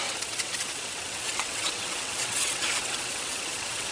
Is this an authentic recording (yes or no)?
no